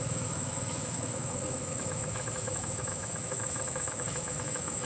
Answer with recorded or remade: remade